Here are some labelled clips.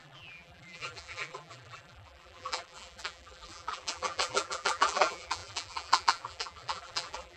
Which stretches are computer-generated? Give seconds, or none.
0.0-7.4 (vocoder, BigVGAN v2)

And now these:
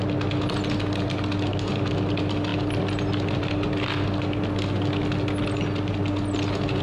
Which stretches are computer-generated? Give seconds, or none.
none

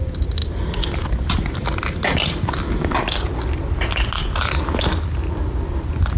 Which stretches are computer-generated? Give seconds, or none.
none

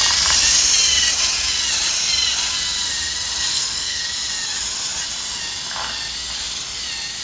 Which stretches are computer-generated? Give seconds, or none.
3.5-4.0 (codec, SNAC)